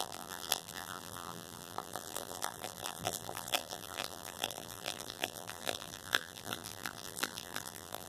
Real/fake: fake